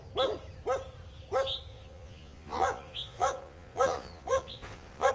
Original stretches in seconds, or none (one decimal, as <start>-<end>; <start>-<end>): 0.0-1.7